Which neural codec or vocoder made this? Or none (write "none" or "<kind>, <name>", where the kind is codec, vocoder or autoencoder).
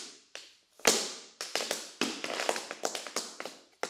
none